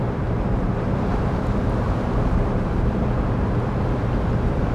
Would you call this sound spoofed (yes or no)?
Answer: yes